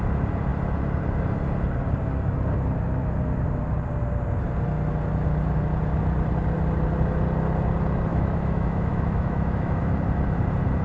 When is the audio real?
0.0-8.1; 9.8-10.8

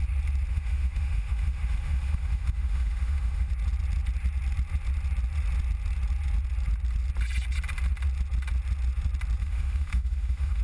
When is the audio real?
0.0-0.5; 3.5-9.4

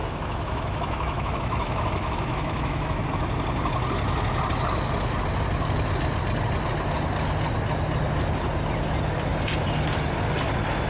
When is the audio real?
3.0-10.9